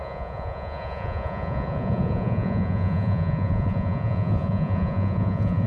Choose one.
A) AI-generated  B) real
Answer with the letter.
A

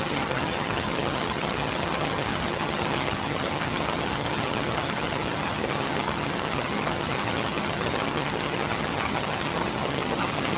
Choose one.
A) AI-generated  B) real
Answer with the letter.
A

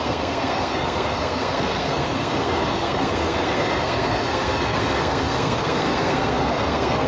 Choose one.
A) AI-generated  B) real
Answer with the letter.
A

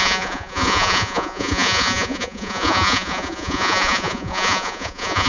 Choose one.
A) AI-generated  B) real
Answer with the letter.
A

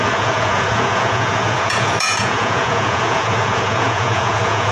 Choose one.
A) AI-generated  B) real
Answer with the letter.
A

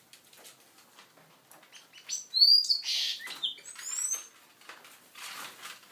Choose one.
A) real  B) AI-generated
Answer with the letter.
A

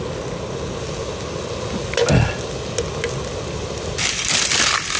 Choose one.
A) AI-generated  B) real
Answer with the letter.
B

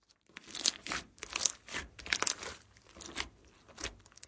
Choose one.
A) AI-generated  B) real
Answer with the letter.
A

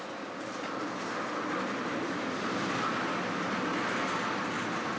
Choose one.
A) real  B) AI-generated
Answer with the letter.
A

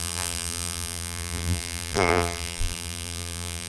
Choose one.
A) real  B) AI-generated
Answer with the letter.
B